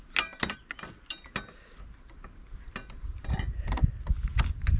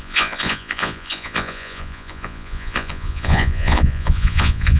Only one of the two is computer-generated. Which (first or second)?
second